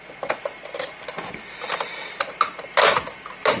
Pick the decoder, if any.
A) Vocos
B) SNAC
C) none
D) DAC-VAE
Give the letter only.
C